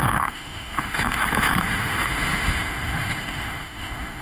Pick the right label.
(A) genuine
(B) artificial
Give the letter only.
B